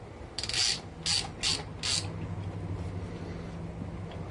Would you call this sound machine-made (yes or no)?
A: no